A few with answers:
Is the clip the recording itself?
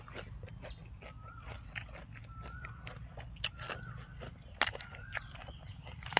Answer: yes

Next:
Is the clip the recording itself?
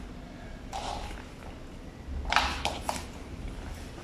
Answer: yes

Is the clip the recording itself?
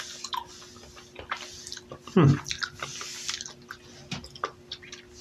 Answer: yes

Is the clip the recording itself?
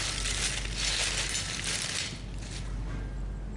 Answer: yes